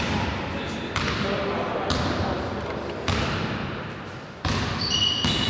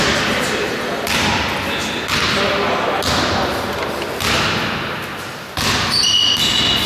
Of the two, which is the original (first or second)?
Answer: second